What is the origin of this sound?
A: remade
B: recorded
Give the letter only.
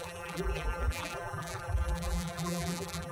A